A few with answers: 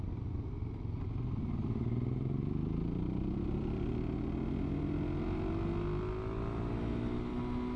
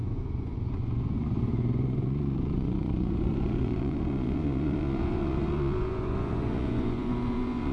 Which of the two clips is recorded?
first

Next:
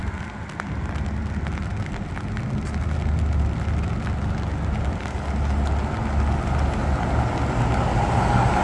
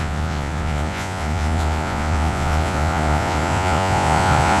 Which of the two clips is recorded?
first